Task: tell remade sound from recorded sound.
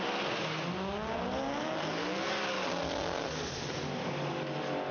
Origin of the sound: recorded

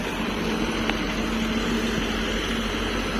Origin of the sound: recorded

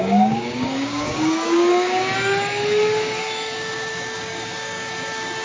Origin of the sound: remade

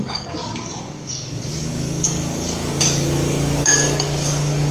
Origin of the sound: remade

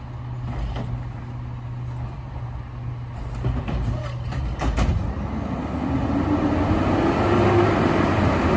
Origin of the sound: recorded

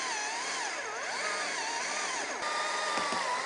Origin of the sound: recorded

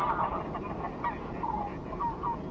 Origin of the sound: recorded